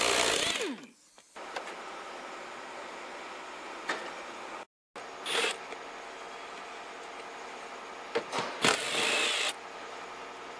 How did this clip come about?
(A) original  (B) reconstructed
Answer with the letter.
A